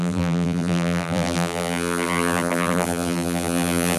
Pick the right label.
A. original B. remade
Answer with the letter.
B